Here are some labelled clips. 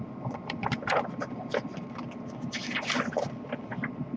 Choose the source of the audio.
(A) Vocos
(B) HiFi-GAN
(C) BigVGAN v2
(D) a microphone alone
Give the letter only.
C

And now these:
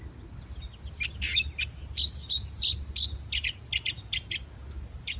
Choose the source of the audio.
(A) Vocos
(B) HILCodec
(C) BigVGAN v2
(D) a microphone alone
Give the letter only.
D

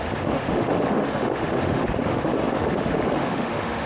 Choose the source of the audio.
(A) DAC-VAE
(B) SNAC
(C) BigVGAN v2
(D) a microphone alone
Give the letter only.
A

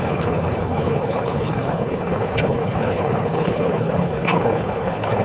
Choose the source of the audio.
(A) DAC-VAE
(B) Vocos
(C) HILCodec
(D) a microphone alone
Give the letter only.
C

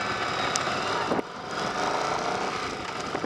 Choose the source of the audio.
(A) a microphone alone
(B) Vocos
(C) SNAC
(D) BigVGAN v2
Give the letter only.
A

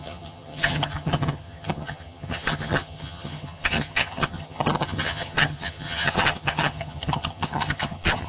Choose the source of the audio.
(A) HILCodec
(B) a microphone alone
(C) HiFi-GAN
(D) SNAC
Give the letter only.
C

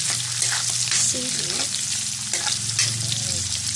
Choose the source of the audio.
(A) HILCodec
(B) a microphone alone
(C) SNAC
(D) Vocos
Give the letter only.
B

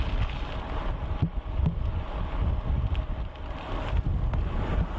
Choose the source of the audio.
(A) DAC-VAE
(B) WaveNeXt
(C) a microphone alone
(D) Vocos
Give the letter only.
C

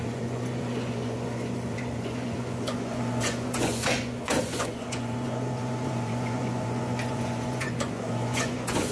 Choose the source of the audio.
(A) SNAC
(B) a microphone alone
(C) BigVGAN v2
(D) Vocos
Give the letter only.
D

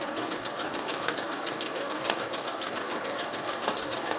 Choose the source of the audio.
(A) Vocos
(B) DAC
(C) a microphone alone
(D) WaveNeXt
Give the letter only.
B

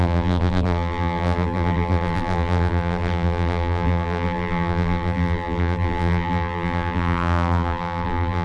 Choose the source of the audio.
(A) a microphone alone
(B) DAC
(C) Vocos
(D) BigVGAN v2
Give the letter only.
D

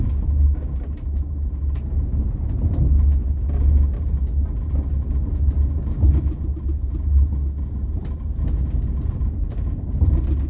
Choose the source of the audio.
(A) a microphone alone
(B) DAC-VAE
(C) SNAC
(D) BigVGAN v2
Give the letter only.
A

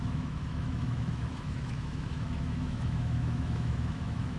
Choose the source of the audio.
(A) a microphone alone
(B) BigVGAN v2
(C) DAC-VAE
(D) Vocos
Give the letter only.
C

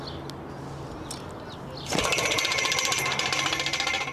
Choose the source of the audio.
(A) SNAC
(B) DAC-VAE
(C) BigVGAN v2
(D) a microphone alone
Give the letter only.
D